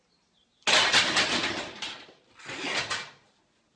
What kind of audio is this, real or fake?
real